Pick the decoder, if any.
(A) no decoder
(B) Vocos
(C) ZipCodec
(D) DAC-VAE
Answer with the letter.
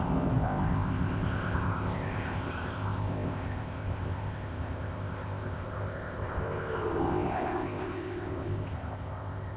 C